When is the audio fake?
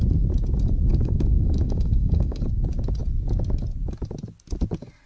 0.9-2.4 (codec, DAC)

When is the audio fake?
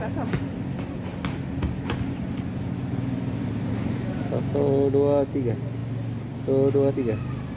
none